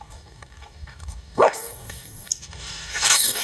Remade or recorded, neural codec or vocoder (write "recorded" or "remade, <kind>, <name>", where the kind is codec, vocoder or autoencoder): remade, codec, DAC